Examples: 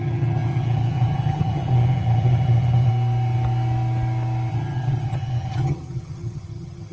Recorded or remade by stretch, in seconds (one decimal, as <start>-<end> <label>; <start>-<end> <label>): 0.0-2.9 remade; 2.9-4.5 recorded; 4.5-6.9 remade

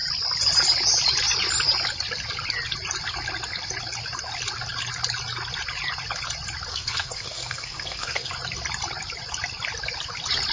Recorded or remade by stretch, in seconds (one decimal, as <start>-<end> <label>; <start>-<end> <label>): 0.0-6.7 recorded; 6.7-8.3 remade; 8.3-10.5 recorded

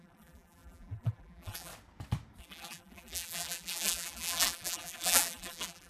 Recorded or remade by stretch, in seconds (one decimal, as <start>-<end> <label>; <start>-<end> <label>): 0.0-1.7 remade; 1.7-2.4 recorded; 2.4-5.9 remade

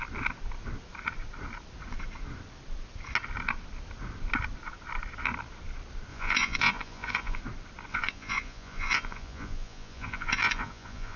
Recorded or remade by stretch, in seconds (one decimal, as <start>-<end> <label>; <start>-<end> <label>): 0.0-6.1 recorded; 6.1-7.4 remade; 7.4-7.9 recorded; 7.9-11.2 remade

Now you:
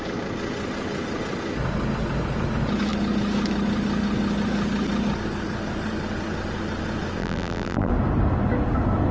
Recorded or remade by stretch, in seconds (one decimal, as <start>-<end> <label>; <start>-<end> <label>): 0.0-7.2 recorded; 7.2-7.9 remade; 7.9-9.1 recorded

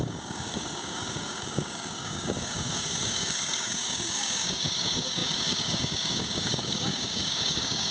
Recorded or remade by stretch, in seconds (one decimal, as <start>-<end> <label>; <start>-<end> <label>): 0.0-7.9 remade